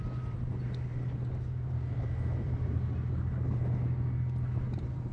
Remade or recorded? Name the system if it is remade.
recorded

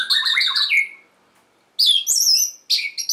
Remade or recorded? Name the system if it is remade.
recorded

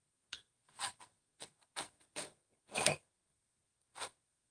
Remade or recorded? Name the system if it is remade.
remade, codec, SNAC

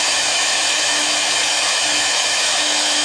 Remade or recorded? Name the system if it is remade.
remade, autoencoder, DAC-VAE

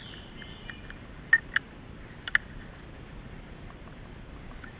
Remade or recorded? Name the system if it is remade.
recorded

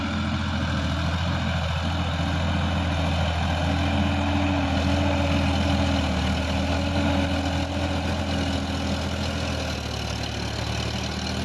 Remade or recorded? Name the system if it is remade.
recorded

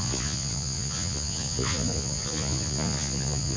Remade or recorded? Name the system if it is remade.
remade, vocoder, Vocos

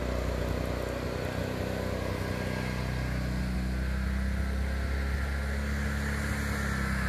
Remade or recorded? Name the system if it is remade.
recorded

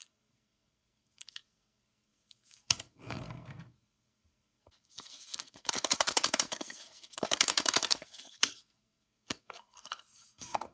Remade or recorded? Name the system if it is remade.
remade, codec, SNAC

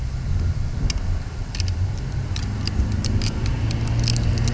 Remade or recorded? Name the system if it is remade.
recorded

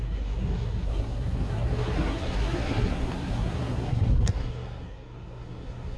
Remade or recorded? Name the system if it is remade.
remade, codec, SNAC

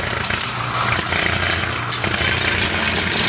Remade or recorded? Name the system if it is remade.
recorded